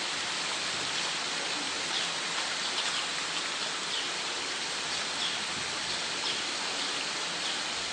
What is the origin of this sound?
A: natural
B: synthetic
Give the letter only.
A